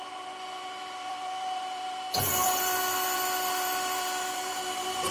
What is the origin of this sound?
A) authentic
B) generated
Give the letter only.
B